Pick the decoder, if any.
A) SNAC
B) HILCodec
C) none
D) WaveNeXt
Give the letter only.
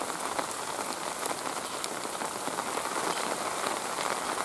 C